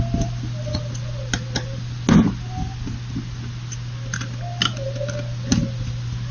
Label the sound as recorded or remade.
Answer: recorded